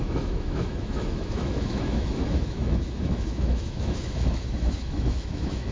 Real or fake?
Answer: fake